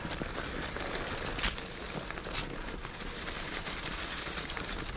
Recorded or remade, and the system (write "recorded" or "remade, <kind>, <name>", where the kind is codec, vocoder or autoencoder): recorded